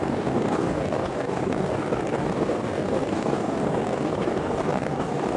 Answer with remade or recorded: remade